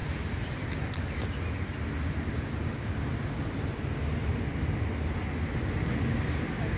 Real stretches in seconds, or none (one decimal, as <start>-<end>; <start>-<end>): 0.0-6.8